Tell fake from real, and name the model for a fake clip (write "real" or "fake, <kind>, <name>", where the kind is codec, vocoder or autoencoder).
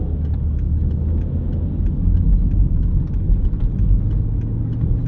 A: real